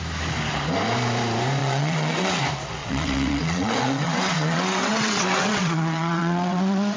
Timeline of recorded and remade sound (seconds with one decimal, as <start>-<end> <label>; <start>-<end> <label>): 0.0-1.6 recorded; 1.6-2.4 remade; 2.4-2.8 recorded; 2.8-7.0 remade